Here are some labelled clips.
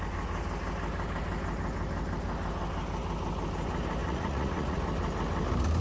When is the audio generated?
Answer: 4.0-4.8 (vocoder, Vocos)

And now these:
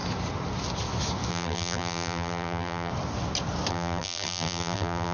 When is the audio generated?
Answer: 1.3-2.9 (vocoder, BigVGAN v2); 3.7-5.1

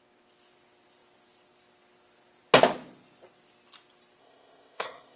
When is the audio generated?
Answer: 4.2-5.2 (codec, ZipCodec)

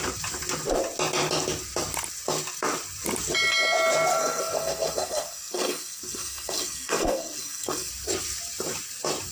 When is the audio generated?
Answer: 4.1-7.9 (codec, SNAC)

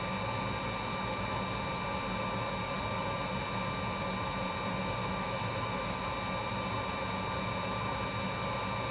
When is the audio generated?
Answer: 5.0-6.0 (autoencoder, DAC-VAE)